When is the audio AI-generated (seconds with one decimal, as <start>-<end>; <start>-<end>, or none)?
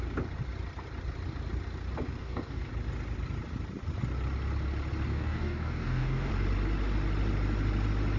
2.2-2.7; 5.1-6.3